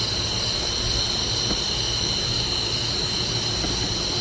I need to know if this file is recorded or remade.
recorded